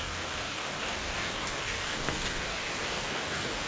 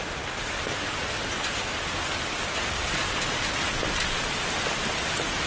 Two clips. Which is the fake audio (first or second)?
first